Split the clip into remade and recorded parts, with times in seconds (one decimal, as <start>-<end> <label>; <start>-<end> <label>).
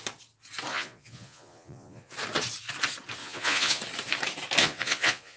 0.0-0.7 recorded; 0.7-2.1 remade; 2.1-3.2 recorded; 3.2-3.8 remade; 3.8-4.6 recorded; 4.6-5.4 remade